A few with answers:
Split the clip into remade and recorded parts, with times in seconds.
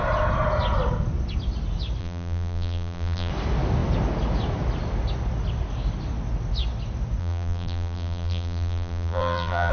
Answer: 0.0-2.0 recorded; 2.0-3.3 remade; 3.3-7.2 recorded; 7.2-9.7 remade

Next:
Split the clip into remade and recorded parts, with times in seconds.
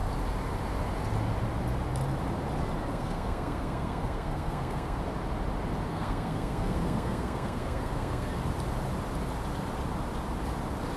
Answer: 0.0-2.9 recorded; 2.9-5.0 remade; 5.0-5.9 recorded; 5.9-8.4 remade; 8.4-11.0 recorded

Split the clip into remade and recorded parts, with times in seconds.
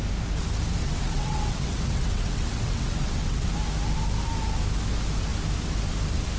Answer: 0.0-0.8 recorded; 0.8-3.5 remade; 3.5-6.4 recorded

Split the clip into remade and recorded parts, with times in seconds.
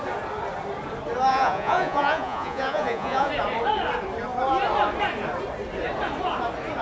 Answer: 0.0-1.3 recorded; 1.3-3.3 remade; 3.3-6.8 recorded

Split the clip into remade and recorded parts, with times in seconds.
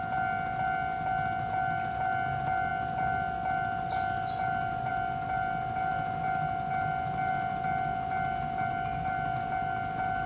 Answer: 0.0-10.3 recorded